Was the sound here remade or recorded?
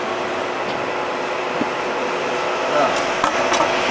recorded